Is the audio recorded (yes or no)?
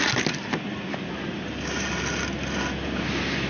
yes